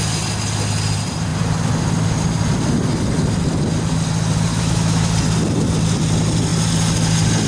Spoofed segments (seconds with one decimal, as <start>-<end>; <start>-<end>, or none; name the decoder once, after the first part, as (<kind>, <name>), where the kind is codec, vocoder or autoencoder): 4.5-5.1 (autoencoder, DAC-VAE)